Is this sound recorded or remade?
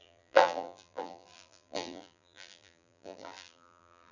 remade